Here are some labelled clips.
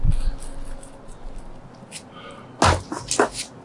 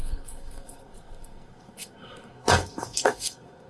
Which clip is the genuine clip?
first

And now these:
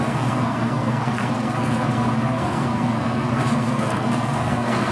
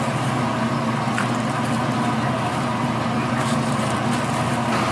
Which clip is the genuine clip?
second